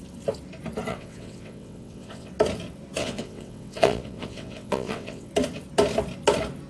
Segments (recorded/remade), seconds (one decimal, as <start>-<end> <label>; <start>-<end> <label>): 0.0-0.9 recorded; 0.9-2.3 remade; 2.3-3.0 recorded; 3.0-5.3 remade; 5.3-6.7 recorded